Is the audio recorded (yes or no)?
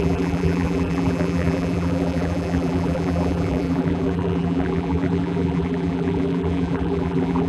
no